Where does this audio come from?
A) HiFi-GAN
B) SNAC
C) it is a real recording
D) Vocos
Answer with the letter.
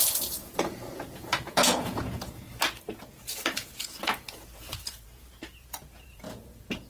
D